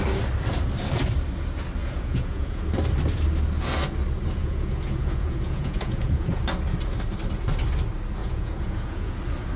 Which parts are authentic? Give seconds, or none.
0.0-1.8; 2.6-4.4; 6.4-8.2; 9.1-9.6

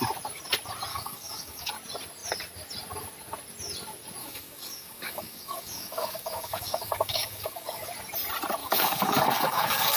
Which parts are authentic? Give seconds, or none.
0.0-0.9; 1.7-4.2; 7.9-8.6

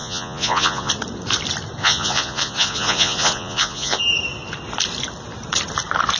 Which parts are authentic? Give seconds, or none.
0.9-1.8; 4.0-6.2

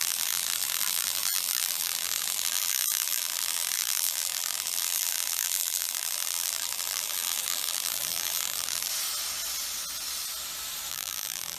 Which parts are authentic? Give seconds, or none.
8.9-10.9